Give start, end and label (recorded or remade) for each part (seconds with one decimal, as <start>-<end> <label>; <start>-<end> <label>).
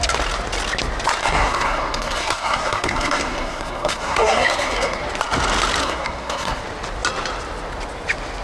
0.0-1.2 recorded; 1.2-5.0 remade; 5.0-5.8 recorded; 5.8-6.6 remade; 6.6-8.4 recorded